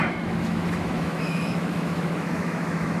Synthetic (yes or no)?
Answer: yes